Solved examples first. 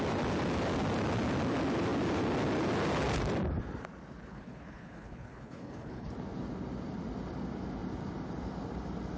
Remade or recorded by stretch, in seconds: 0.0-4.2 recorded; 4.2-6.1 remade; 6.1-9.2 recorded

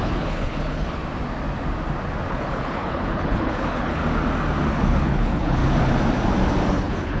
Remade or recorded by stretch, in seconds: 0.0-1.0 remade; 1.0-2.3 recorded; 2.3-4.0 remade; 4.0-4.7 recorded; 4.7-5.6 remade; 5.6-6.7 recorded; 6.7-7.2 remade

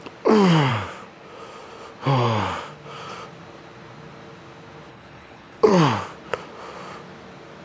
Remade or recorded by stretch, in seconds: 0.0-4.9 recorded; 4.9-5.7 remade; 5.7-7.6 recorded

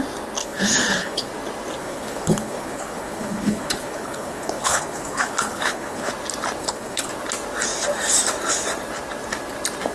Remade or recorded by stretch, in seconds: 0.0-0.4 recorded; 0.4-1.3 remade; 1.3-1.8 recorded; 1.8-6.1 remade; 6.1-6.6 recorded; 6.6-7.1 remade; 7.1-9.9 recorded

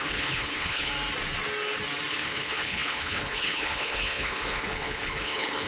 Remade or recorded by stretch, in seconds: 0.0-0.9 remade; 0.9-2.1 recorded; 2.1-5.7 remade

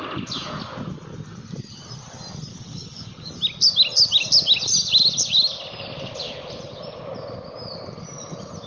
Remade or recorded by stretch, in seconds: 0.0-2.5 recorded; 2.5-3.3 remade; 3.3-8.7 recorded